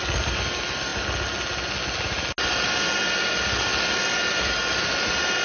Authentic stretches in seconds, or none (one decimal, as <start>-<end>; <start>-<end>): 0.0-5.4